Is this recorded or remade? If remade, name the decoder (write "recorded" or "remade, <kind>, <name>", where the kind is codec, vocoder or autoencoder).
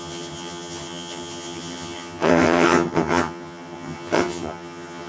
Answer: remade, vocoder, HiFi-GAN